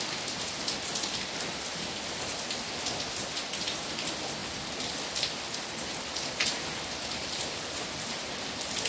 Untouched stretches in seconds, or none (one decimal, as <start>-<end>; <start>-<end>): 0.0-8.9